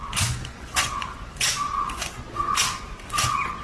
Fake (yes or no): yes